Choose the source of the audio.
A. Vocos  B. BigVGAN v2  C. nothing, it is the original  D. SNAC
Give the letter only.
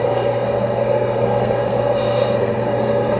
D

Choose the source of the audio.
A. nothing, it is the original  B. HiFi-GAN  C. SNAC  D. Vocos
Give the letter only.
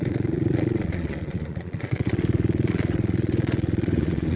D